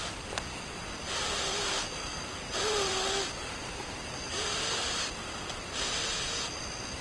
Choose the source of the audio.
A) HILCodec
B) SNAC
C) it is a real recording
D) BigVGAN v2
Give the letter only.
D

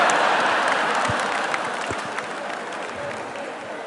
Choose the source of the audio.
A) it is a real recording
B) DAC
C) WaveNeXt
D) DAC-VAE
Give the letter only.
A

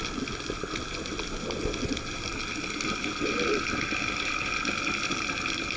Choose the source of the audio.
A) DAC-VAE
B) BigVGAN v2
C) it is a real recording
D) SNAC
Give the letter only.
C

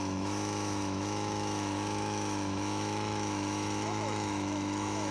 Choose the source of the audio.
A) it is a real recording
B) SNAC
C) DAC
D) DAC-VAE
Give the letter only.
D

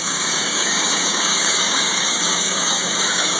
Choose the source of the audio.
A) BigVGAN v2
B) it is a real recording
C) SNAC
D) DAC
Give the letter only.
D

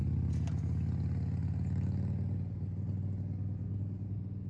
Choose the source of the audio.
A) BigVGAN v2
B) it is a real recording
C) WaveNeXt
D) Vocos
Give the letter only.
B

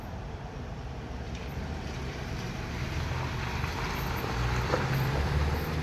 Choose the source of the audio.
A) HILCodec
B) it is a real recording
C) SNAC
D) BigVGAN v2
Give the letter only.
D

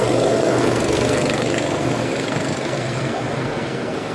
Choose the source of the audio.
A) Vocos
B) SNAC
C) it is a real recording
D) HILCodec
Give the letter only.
B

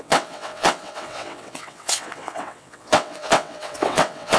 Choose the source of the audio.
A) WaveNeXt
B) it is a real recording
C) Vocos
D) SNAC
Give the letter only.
A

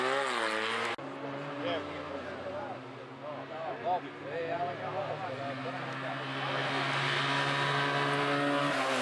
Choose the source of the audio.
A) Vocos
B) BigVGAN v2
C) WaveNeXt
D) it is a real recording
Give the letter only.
D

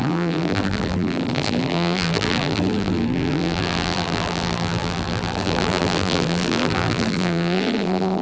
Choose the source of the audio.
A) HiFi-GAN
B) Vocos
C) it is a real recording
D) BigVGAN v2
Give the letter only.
D